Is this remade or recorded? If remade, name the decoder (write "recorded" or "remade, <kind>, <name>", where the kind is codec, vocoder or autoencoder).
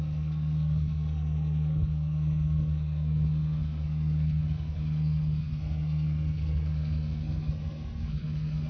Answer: remade, codec, SNAC